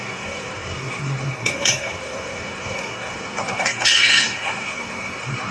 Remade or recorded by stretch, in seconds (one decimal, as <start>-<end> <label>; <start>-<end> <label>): 0.0-5.5 remade